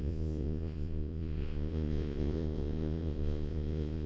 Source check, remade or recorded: remade